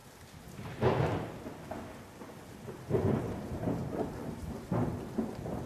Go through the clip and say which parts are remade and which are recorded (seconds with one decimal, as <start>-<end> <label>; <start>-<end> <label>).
0.0-3.2 recorded; 3.2-5.7 remade